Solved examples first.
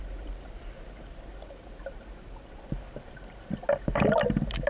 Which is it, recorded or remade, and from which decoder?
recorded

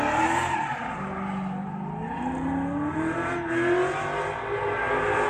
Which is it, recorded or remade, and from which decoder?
recorded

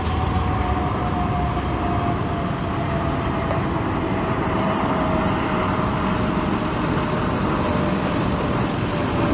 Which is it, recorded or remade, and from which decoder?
recorded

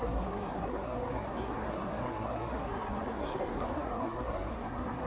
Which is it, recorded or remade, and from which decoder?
remade, codec, SNAC